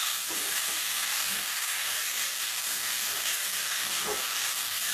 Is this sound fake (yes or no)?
yes